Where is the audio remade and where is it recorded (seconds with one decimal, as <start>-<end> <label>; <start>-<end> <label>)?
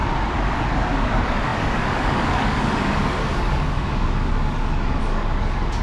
0.0-0.6 recorded; 0.6-5.8 remade